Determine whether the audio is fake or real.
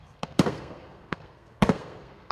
fake